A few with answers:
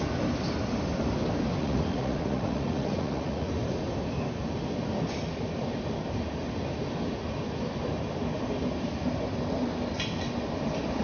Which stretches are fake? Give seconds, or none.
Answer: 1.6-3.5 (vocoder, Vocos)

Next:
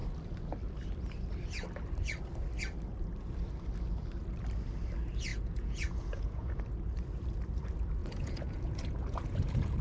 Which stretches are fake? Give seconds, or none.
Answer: 5.3-6.6 (vocoder, Vocos); 8.0-9.8

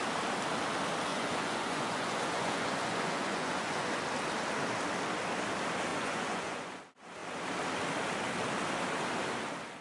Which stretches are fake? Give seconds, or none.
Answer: 1.1-4.0 (vocoder, Vocos); 5.9-6.8